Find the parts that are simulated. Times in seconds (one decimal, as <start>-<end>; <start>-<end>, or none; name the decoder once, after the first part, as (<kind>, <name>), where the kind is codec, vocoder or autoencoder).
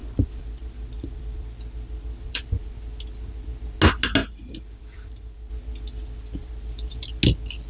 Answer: 0.0-2.6 (vocoder, BigVGAN v2); 4.2-5.5; 6.4-7.0